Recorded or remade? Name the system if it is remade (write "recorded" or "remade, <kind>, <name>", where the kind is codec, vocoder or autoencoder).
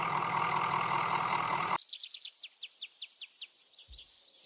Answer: recorded